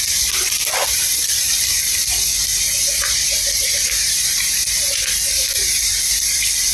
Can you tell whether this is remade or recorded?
remade